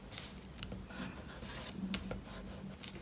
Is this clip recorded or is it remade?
recorded